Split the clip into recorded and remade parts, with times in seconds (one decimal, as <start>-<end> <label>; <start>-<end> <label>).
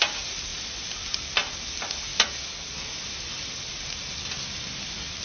0.0-5.2 recorded